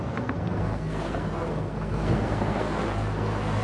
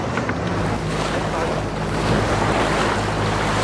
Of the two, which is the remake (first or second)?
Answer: first